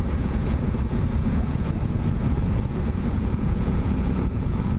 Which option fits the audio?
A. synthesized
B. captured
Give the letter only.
A